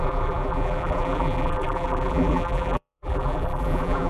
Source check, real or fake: fake